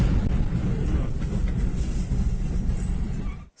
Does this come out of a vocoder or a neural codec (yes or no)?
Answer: no